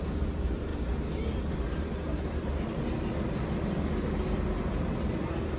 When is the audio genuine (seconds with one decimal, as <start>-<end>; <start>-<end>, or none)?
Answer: 0.0-5.6